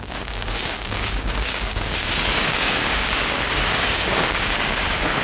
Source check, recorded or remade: remade